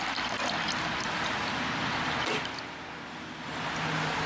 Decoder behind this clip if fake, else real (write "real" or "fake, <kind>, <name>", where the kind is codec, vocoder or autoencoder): real